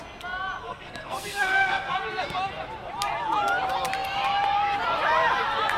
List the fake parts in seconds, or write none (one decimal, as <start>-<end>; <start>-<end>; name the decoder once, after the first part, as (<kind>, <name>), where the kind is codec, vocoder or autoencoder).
0.6-2.2 (codec, SNAC)